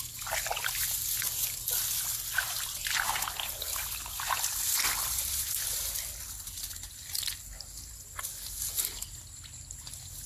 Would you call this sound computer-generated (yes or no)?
no